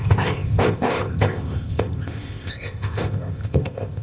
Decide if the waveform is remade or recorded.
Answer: remade